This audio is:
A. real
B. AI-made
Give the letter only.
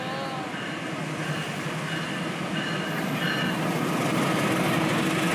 A